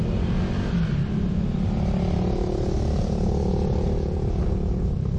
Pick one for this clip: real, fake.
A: real